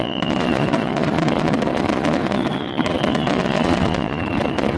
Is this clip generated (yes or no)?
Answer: yes